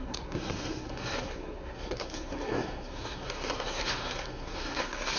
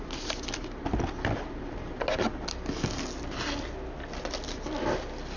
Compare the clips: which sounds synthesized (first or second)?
first